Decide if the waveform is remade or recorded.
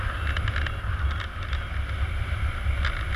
recorded